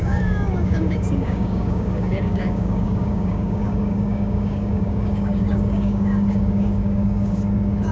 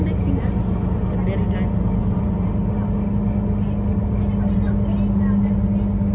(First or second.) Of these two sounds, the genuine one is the second